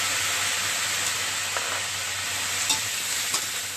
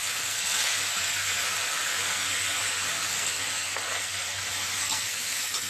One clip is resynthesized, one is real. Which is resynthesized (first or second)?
second